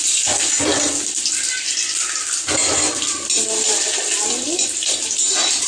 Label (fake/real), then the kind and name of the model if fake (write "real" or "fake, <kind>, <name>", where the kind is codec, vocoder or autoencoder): real